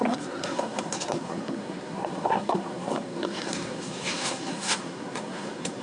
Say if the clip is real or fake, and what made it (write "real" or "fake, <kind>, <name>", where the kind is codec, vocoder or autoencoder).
fake, codec, SNAC